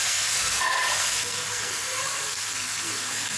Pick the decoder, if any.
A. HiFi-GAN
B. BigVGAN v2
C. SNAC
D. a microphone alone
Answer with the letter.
C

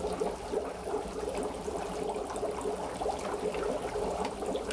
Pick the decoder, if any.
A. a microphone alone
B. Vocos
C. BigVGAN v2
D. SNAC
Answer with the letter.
A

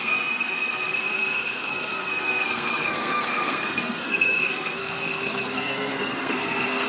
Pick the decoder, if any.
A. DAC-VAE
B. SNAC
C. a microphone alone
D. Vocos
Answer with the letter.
B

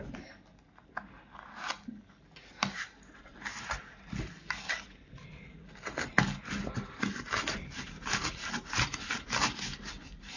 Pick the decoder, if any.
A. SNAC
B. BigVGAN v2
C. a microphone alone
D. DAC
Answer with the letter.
C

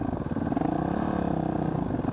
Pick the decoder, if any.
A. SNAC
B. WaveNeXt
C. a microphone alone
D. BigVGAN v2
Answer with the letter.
C